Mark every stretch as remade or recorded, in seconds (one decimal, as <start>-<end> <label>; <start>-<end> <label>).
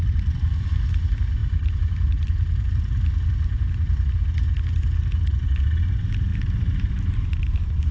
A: 0.0-1.4 recorded; 1.4-2.7 remade; 2.7-6.3 recorded; 6.3-6.9 remade; 6.9-7.9 recorded